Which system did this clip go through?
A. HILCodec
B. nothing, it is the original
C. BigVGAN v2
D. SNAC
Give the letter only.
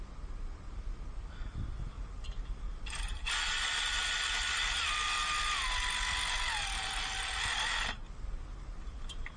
B